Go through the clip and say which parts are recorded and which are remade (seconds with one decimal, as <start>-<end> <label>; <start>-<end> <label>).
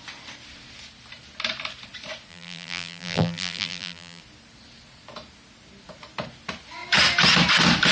0.0-2.3 recorded; 2.3-4.2 remade; 4.2-7.9 recorded